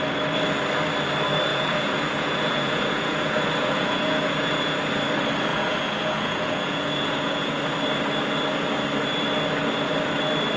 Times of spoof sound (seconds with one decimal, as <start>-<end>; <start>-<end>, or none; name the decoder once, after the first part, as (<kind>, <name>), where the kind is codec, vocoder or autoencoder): 1.5-4.8 (vocoder, Vocos); 5.5-7.6